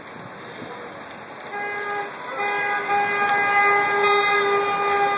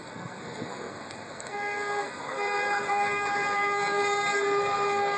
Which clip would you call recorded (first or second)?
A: first